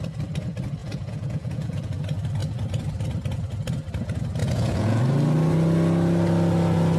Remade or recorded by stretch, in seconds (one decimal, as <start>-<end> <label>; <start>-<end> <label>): 0.0-0.8 recorded; 0.8-1.9 remade; 1.9-4.4 recorded; 4.4-5.0 remade; 5.0-7.0 recorded